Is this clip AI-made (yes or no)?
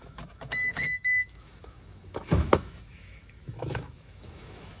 yes